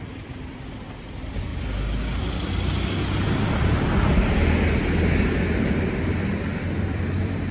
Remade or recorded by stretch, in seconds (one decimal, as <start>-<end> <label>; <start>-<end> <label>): 0.0-1.5 remade; 1.5-6.0 recorded; 6.0-7.5 remade